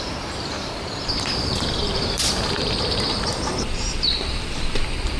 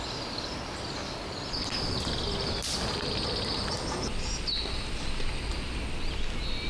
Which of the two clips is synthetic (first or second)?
first